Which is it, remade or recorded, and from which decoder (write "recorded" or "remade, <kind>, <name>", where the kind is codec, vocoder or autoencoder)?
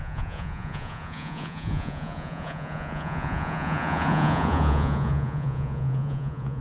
remade, vocoder, Vocos